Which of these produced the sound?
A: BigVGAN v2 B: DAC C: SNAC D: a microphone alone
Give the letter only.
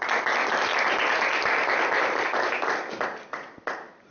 D